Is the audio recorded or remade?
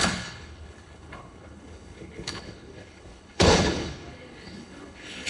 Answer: remade